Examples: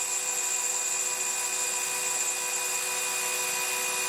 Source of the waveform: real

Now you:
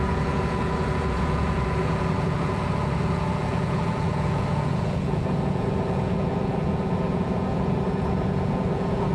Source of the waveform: fake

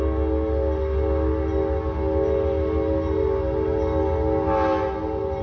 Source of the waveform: real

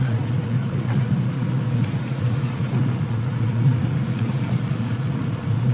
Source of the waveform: fake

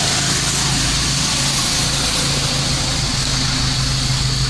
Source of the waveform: real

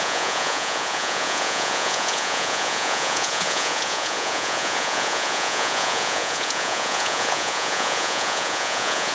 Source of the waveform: fake